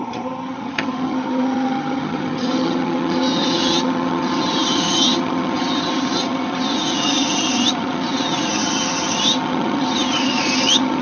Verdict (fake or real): fake